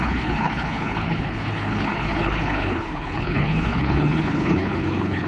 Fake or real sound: fake